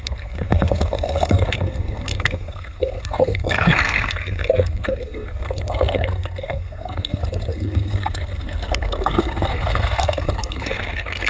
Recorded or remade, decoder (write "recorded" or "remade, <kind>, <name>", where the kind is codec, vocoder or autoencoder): remade, codec, SNAC